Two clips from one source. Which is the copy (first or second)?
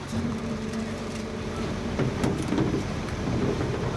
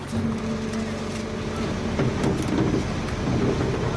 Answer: first